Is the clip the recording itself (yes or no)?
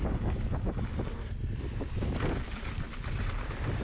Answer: yes